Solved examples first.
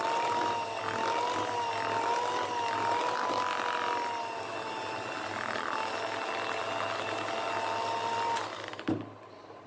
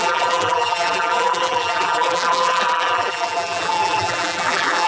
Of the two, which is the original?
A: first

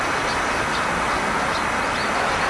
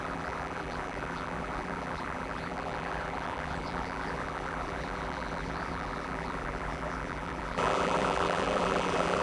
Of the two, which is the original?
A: first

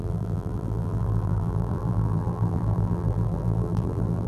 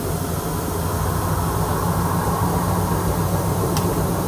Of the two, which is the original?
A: second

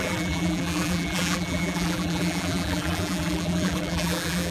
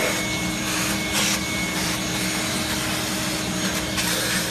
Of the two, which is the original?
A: second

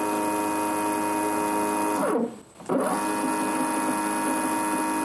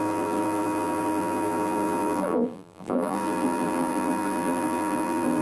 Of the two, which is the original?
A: first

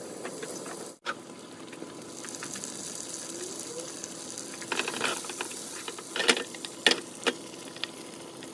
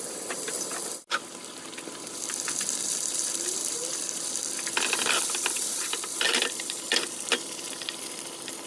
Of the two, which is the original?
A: first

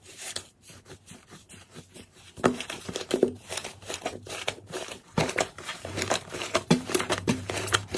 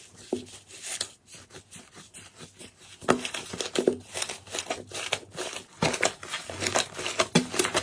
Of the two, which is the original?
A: second